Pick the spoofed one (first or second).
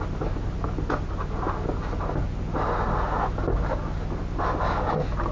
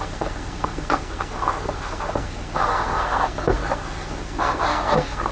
second